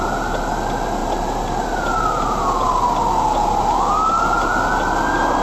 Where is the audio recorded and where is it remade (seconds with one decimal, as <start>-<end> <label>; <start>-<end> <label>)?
0.0-5.4 recorded